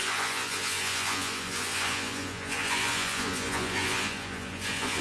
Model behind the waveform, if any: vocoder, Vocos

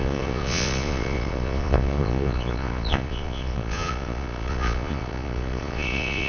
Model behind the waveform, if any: vocoder, Vocos